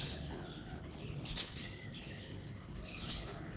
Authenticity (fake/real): fake